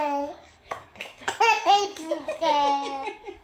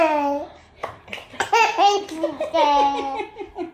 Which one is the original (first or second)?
second